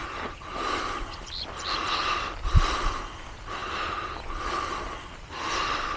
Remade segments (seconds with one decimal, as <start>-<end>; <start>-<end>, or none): none